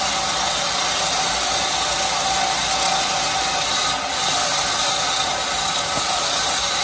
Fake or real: real